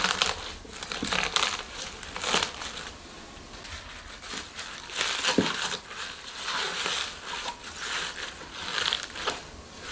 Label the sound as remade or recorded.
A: recorded